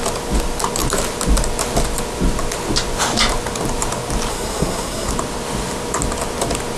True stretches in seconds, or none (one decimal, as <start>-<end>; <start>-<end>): 0.0-4.3; 5.1-6.8